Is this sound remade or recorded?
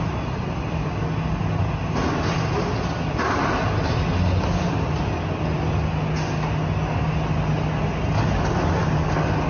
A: recorded